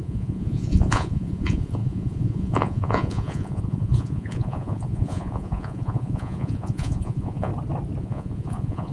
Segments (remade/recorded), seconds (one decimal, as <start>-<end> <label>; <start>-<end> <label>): 0.0-7.5 remade; 7.5-8.0 recorded; 8.0-8.9 remade